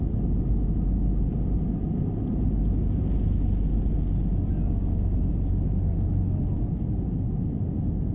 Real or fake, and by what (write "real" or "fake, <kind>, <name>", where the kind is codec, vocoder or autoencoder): real